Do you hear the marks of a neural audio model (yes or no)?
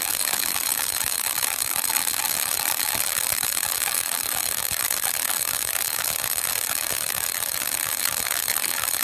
yes